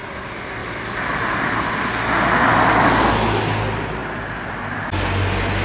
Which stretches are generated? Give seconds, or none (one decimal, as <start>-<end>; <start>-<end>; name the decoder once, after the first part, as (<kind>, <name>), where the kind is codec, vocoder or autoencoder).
0.6-1.2 (vocoder, BigVGAN v2)